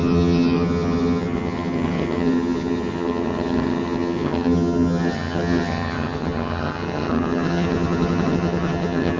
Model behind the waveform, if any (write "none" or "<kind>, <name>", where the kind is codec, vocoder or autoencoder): vocoder, HiFi-GAN